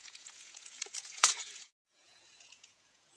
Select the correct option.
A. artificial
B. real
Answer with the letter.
A